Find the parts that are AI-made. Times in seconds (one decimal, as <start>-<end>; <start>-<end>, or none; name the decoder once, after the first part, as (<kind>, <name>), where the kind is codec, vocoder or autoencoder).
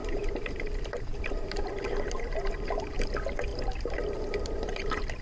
0.0-3.1 (vocoder, BigVGAN v2); 3.5-5.2